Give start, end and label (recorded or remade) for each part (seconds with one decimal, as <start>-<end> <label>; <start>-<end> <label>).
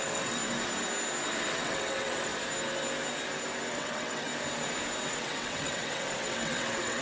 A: 0.0-0.4 remade; 0.4-1.5 recorded; 1.5-2.3 remade; 2.3-3.7 recorded; 3.7-4.3 remade; 4.3-5.1 recorded; 5.1-7.0 remade